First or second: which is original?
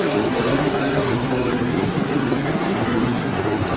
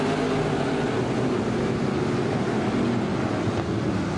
second